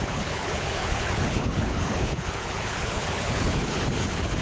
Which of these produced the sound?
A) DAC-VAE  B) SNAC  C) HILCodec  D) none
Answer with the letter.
C